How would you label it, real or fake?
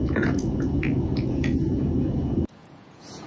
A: fake